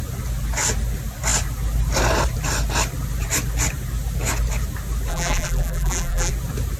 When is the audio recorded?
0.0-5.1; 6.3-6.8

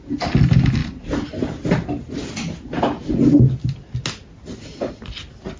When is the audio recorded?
0.0-5.6

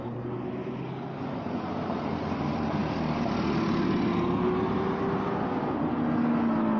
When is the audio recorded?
0.0-6.8

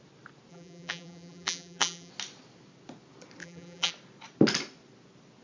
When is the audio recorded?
0.0-0.5; 2.1-3.4; 3.9-5.4

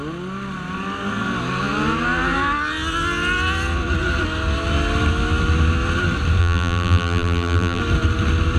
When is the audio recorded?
0.0-6.4; 7.8-8.6

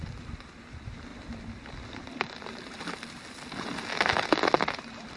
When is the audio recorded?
0.0-5.2